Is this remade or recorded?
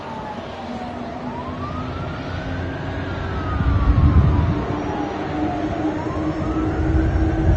recorded